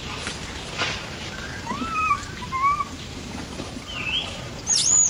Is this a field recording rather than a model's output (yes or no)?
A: yes